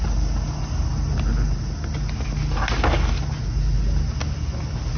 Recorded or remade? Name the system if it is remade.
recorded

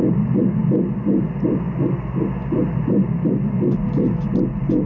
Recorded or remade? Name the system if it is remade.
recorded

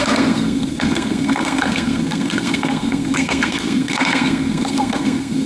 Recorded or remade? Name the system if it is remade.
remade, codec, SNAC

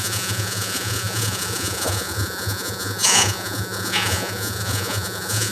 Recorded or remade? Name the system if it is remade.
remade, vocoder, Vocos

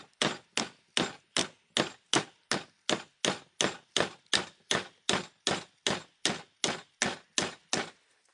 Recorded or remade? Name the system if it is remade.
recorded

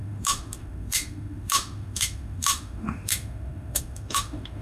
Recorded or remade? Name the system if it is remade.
remade, autoencoder, DAC-VAE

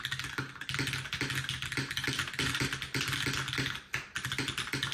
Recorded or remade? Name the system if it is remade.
recorded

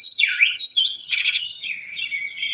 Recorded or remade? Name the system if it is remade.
remade, vocoder, HiFi-GAN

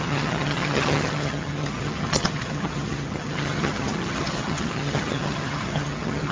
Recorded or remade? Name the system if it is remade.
remade, vocoder, HiFi-GAN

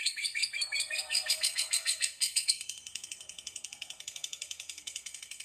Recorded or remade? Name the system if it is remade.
remade, codec, SNAC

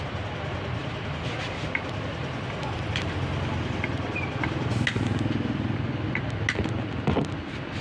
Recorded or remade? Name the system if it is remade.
recorded